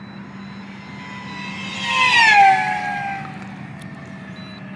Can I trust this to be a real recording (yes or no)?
yes